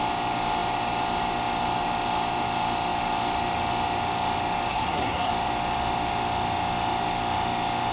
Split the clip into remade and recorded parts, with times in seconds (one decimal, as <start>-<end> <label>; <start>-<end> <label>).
0.0-4.7 recorded; 4.7-5.3 remade; 5.3-7.9 recorded